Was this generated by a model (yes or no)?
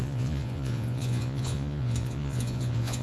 yes